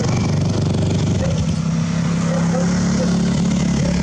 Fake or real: real